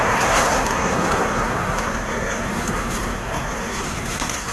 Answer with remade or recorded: remade